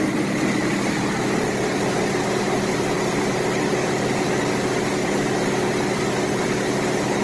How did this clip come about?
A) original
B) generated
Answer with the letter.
A